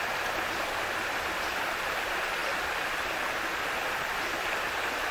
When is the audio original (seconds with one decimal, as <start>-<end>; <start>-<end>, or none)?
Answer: 0.0-5.1